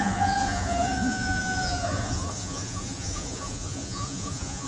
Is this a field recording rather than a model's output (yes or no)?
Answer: no